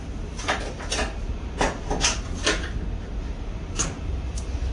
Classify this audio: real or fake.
real